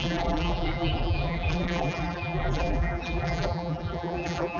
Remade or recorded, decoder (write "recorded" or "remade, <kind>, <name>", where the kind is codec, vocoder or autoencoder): remade, vocoder, BigVGAN v2